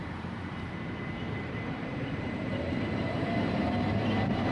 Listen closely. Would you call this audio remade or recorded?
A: remade